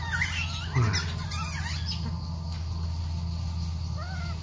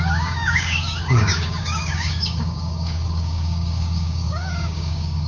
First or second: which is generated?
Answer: second